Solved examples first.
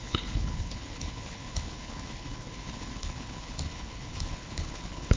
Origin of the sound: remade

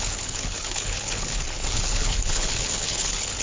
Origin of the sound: remade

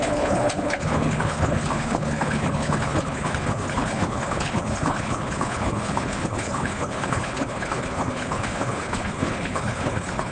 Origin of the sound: remade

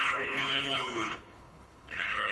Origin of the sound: remade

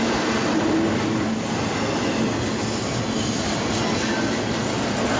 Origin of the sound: recorded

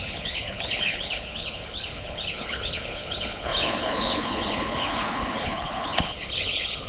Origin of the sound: remade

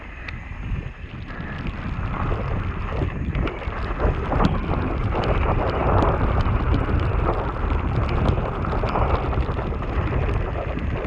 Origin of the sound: recorded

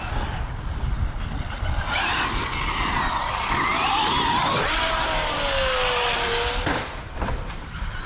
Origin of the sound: recorded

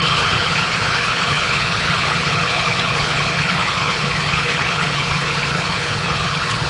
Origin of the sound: remade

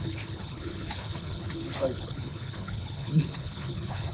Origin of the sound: remade